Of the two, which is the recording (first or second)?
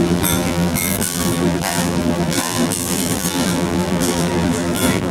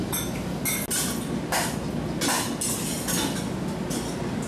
second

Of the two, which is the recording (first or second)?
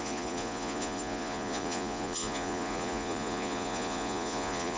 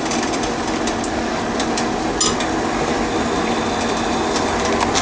second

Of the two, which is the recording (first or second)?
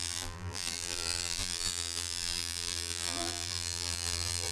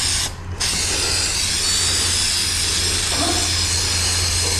second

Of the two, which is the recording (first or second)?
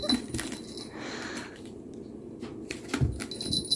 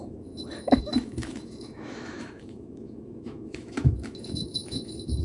first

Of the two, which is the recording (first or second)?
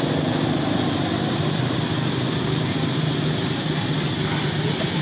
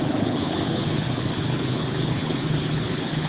first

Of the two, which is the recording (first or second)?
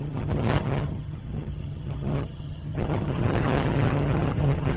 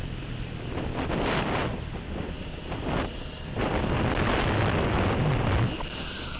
second